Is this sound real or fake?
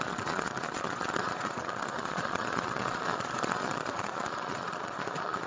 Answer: fake